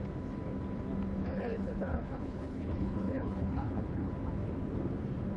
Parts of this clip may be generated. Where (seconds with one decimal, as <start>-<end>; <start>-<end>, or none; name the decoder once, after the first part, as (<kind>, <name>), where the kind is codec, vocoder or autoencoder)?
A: 1.2-4.1 (codec, HILCodec)